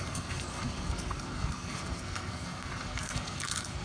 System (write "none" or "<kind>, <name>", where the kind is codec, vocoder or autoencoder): codec, SNAC